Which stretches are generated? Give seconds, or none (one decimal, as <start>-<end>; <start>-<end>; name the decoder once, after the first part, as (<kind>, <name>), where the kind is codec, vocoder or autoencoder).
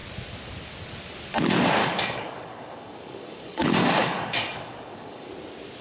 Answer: 1.8-5.3 (codec, DAC)